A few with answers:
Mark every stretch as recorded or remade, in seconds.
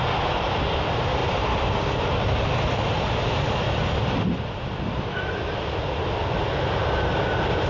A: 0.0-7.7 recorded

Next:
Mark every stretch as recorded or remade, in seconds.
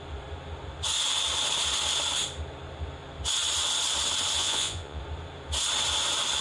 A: 0.0-4.4 recorded; 4.4-5.0 remade; 5.0-6.4 recorded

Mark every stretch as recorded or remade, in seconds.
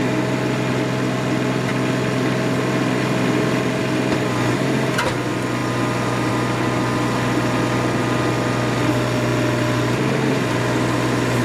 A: 0.0-11.4 recorded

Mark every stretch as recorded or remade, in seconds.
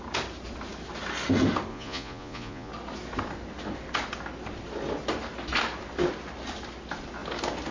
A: 0.0-1.7 recorded; 1.7-2.7 remade; 2.7-7.7 recorded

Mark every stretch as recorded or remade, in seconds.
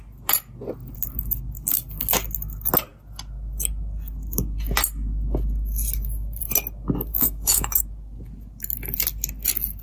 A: 0.0-7.1 recorded; 7.1-7.8 remade; 7.8-9.8 recorded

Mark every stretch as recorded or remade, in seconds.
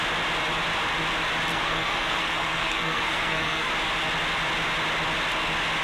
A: 0.0-1.5 recorded; 1.5-3.7 remade; 3.7-5.8 recorded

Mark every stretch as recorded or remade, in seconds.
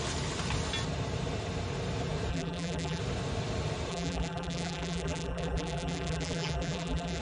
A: 0.0-2.3 recorded; 2.3-3.0 remade; 3.0-3.9 recorded; 3.9-7.2 remade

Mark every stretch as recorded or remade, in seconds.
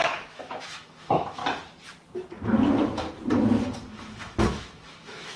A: 0.0-1.4 remade; 1.4-3.9 recorded; 3.9-5.4 remade